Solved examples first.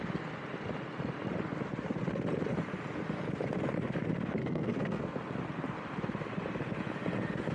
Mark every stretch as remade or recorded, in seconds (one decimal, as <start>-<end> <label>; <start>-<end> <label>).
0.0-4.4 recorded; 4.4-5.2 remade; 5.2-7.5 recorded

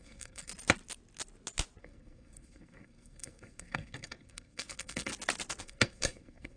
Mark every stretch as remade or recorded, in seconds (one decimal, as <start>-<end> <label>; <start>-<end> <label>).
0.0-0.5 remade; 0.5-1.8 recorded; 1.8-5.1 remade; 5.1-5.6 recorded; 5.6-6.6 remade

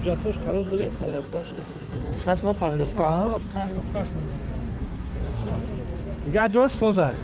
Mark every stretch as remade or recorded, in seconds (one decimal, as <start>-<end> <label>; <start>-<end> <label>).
0.0-0.5 recorded; 0.5-3.8 remade; 3.8-4.7 recorded; 4.7-5.5 remade; 5.5-6.4 recorded; 6.4-7.2 remade